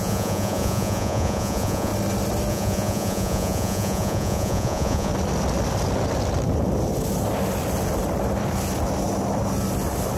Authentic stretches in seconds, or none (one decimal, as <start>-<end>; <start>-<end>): 1.9-2.5; 5.1-10.2